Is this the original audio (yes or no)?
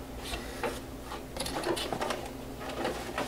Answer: yes